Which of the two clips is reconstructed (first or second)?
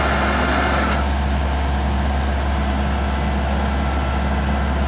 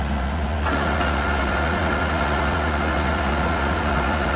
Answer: second